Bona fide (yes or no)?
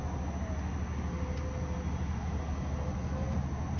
yes